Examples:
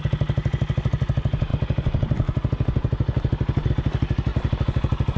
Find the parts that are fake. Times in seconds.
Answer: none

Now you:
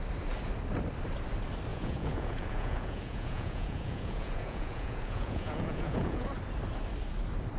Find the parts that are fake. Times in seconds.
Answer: 1.7-6.3